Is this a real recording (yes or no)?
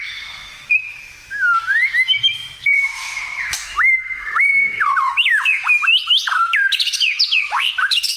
no